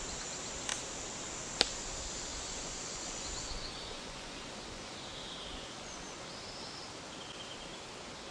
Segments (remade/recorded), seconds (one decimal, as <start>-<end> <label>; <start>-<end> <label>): 0.0-2.3 recorded; 2.3-5.1 remade; 5.1-5.5 recorded; 5.5-6.3 remade; 6.3-8.3 recorded